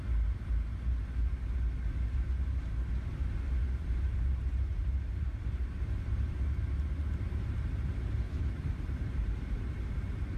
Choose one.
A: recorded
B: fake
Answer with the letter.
B